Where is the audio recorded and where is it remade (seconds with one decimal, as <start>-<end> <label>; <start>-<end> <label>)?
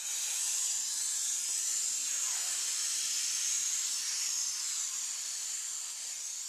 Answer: 0.0-2.1 recorded; 2.1-5.6 remade; 5.6-6.5 recorded